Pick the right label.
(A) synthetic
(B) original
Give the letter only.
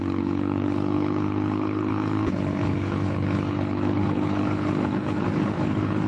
A